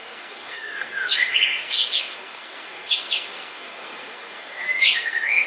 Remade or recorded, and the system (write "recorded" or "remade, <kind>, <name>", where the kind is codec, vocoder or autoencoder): remade, codec, SNAC